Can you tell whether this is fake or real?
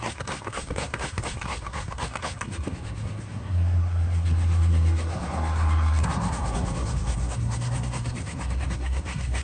fake